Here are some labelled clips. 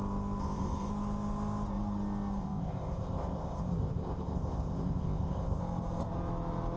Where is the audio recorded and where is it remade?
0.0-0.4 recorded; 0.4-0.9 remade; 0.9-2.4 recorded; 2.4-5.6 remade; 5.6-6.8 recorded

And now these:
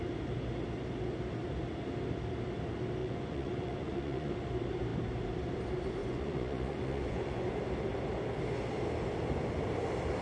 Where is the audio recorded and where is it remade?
0.0-3.0 recorded; 3.0-4.3 remade; 4.3-6.0 recorded; 6.0-7.5 remade; 7.5-10.2 recorded

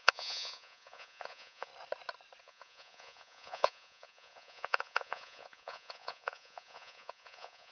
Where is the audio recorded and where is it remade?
0.0-1.7 remade; 1.7-2.4 recorded; 2.4-7.7 remade

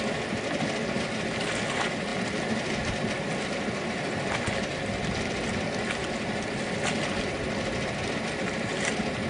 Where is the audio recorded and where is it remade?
0.0-9.3 recorded

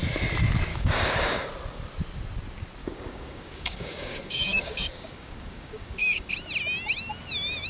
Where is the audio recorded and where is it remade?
0.0-0.7 recorded; 0.7-1.5 remade; 1.5-2.8 recorded; 2.8-6.3 remade; 6.3-7.7 recorded

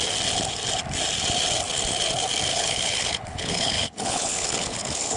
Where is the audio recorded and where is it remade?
0.0-2.5 recorded; 2.5-5.2 remade